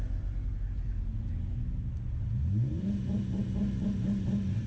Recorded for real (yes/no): yes